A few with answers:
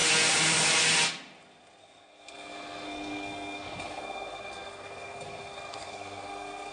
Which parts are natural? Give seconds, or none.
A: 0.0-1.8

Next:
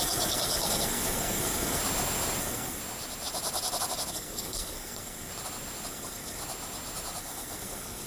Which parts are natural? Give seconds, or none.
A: 1.8-2.4; 2.8-4.1; 5.3-5.9; 6.4-7.2

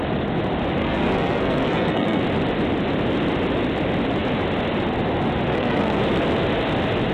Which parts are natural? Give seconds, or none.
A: 0.0-0.8; 2.2-5.5; 6.0-7.1

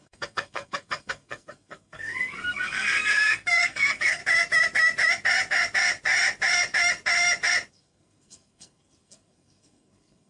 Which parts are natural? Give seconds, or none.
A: 4.2-7.7